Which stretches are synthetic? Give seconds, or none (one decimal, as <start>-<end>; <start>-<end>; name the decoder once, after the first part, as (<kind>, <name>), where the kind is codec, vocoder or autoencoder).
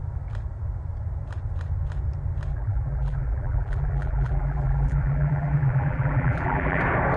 2.5-6.8 (vocoder, BigVGAN v2)